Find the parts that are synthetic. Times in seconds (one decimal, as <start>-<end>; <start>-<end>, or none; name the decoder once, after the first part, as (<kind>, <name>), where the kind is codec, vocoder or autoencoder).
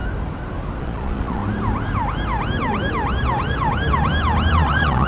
0.8-1.4 (vocoder, Vocos); 4.5-5.1